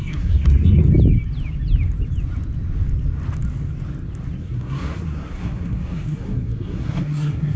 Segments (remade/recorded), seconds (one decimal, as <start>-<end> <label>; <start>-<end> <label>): 0.0-0.9 remade; 0.9-4.4 recorded; 4.4-7.6 remade